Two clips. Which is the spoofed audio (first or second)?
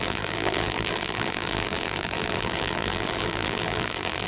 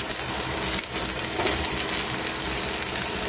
first